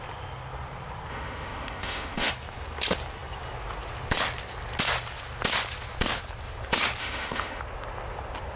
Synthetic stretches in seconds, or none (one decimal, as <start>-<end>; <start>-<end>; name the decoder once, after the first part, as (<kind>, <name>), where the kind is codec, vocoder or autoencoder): 1.1-2.3 (autoencoder, DAC-VAE); 7.0-7.6